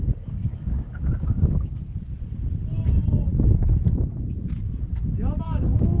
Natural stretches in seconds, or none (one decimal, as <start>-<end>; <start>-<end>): 1.8-5.4